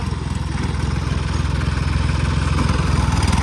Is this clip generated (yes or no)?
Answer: no